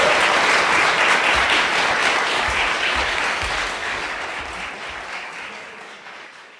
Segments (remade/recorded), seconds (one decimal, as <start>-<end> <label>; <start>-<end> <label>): 0.0-2.0 recorded; 2.0-3.2 remade; 3.2-3.8 recorded; 3.8-4.3 remade; 4.3-5.1 recorded; 5.1-6.6 remade